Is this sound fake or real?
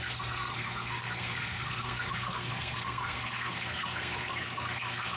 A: fake